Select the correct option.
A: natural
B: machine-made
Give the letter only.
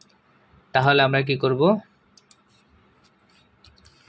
A